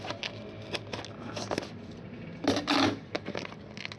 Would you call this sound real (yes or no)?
yes